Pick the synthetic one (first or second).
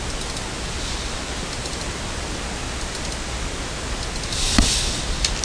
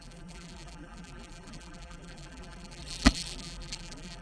second